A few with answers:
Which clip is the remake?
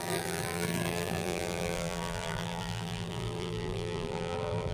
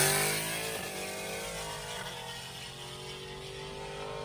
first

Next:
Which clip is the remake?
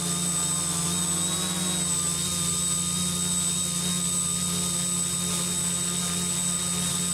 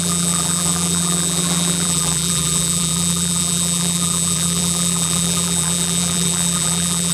second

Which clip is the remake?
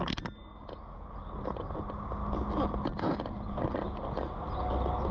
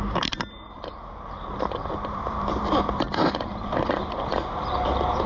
second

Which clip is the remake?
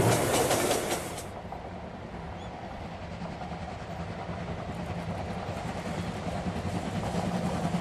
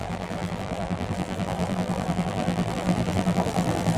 second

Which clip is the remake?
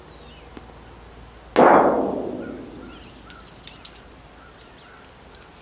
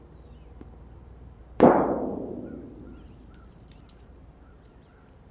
second